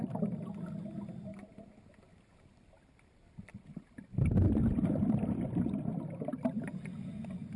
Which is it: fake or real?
real